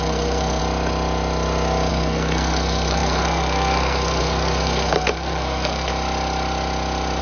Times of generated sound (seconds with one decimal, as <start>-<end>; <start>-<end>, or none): 0.0-0.6; 1.9-5.9